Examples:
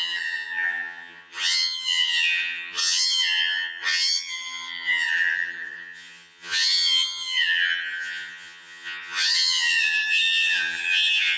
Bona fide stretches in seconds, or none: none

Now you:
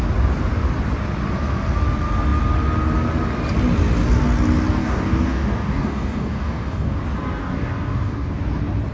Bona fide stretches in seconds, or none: 0.0-4.8; 7.0-7.4; 8.4-8.9

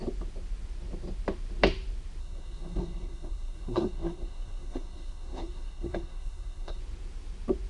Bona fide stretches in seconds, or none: 0.0-2.2; 6.8-7.7